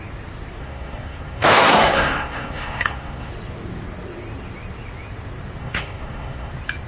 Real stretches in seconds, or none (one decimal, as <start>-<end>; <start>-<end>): 0.0-0.6; 3.3-5.6; 6.5-6.9